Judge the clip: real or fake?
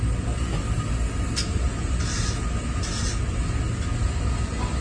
real